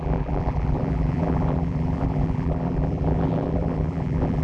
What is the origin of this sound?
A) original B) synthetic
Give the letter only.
B